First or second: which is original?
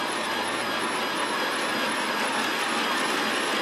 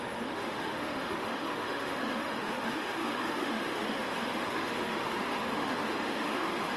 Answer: first